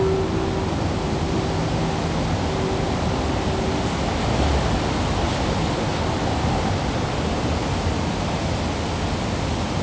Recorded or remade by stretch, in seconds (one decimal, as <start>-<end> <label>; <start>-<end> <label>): 0.0-9.8 recorded